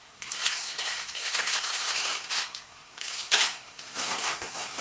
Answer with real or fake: fake